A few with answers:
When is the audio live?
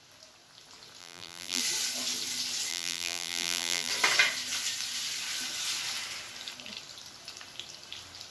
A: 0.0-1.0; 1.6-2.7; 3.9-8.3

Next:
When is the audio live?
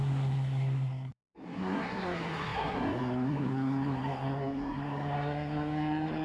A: none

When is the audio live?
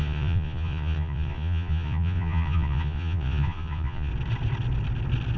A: 4.1-5.4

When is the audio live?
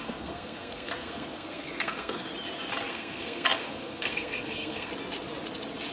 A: 2.3-2.9; 4.9-5.9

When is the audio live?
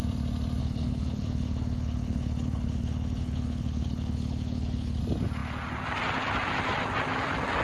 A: 0.0-0.6; 5.0-7.6